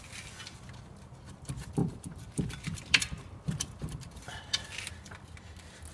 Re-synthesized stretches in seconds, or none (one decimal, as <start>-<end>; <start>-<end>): 1.8-4.9